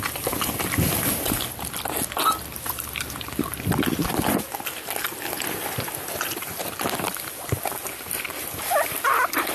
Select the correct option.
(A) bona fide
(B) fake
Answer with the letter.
A